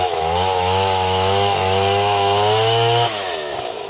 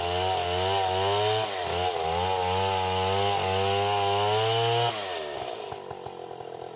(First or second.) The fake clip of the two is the first